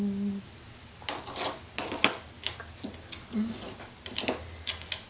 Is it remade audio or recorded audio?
recorded